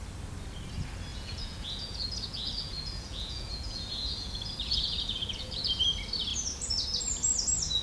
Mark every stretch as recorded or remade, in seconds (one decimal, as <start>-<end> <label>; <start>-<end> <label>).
0.0-1.1 recorded; 1.1-5.8 remade; 5.8-7.8 recorded